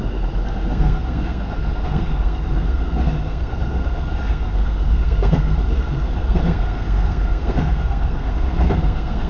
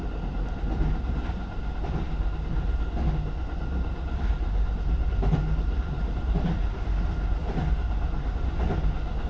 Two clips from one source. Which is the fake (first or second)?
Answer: first